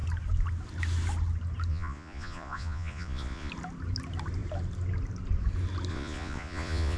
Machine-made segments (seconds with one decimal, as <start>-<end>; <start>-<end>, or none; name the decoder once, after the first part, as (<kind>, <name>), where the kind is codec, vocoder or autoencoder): 1.7-3.5 (vocoder, Vocos); 5.9-7.0